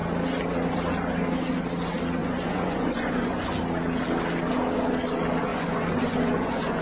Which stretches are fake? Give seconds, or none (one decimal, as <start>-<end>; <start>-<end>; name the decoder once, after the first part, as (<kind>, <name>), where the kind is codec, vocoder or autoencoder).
2.2-3.6 (vocoder, Vocos); 5.5-6.8